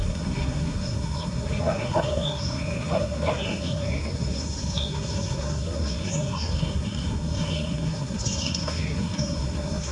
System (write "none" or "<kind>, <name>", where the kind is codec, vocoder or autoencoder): codec, SNAC